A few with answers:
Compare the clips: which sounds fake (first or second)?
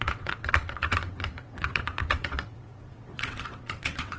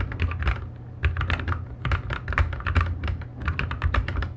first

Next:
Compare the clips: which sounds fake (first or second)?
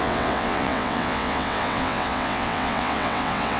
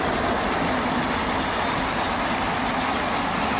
first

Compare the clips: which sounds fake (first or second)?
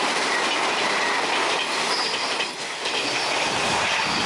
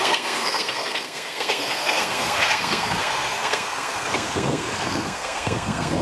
second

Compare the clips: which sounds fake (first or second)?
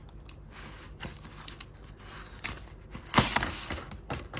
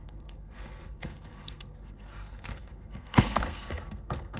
second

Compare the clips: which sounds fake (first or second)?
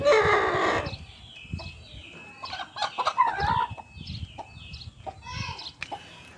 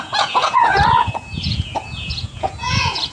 second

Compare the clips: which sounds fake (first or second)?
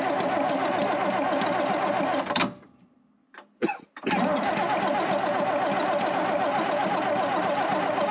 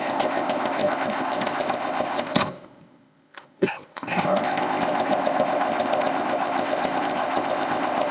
second